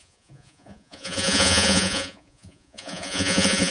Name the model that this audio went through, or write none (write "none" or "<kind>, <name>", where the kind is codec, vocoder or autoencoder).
vocoder, Vocos